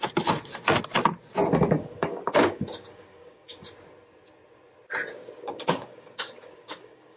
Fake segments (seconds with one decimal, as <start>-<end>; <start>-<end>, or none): 1.5-3.7; 5.2-7.2